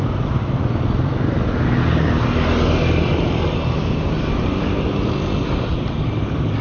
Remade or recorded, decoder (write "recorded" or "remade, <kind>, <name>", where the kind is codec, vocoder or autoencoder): recorded